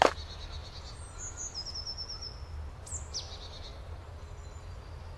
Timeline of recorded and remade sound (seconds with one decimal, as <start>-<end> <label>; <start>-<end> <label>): 0.0-5.2 recorded